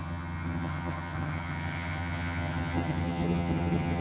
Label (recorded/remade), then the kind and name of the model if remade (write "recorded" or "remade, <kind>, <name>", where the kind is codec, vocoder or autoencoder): remade, vocoder, HiFi-GAN